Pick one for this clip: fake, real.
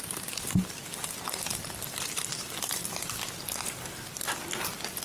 real